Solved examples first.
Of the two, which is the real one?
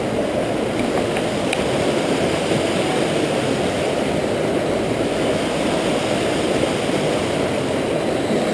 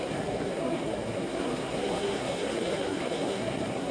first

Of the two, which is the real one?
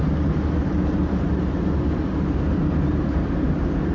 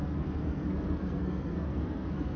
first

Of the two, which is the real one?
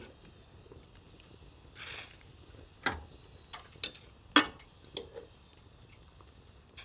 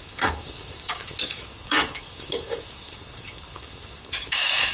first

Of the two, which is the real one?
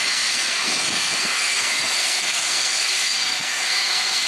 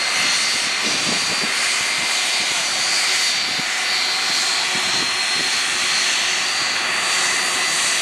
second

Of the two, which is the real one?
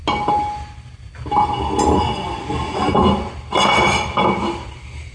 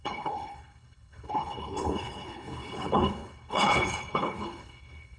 first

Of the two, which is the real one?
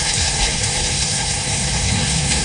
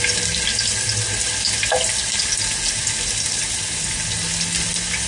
second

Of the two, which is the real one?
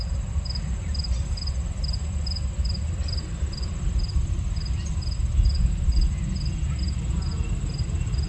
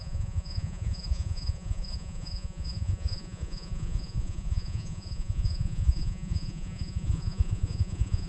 first